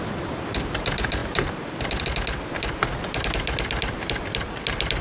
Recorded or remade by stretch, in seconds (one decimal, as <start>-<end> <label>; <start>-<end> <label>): 0.0-5.0 recorded